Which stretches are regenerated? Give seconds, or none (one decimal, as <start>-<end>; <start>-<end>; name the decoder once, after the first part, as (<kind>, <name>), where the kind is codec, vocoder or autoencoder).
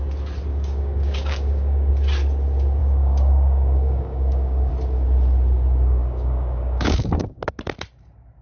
0.5-1.9 (codec, DAC); 2.8-4.7; 6.0-7.4